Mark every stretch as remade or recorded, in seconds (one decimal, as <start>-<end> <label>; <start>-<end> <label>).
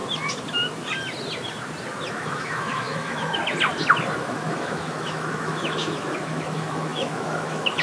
0.0-2.1 recorded; 2.1-3.4 remade; 3.4-4.2 recorded; 4.2-7.8 remade